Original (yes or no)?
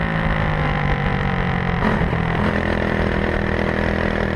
yes